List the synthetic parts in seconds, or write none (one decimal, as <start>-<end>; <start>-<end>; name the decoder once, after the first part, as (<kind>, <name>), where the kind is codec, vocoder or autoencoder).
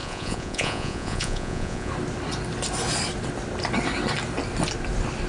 0.0-1.9 (vocoder, Vocos)